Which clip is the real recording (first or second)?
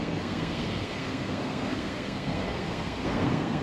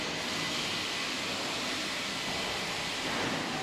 second